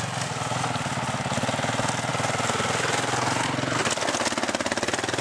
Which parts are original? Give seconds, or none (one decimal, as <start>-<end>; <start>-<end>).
0.0-5.2